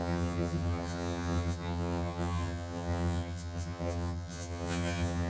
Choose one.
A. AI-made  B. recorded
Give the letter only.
A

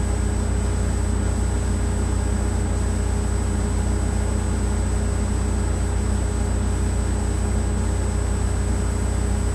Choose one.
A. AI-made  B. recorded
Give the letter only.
B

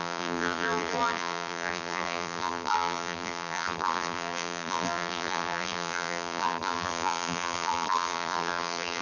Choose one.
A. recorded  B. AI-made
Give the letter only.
B